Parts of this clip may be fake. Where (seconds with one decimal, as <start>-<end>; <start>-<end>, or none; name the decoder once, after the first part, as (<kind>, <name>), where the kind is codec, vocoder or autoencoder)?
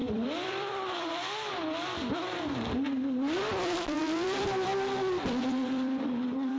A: 0.0-4.7 (vocoder, BigVGAN v2); 5.4-6.6